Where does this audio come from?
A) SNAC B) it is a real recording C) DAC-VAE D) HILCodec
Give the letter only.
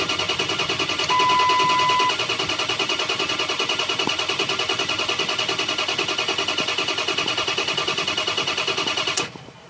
B